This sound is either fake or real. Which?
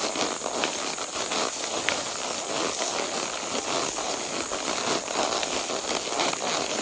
real